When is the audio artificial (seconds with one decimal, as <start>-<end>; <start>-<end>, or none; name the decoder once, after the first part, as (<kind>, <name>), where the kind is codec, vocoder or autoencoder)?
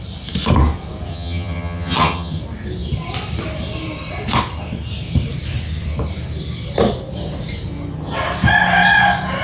1.1-2.4 (vocoder, HiFi-GAN)